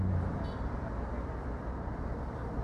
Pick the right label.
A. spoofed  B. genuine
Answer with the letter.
A